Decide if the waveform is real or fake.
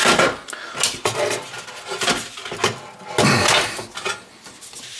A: real